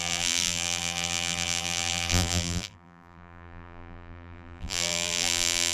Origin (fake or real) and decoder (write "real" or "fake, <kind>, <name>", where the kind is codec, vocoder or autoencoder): fake, vocoder, BigVGAN v2